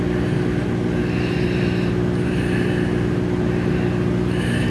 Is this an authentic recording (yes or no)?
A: yes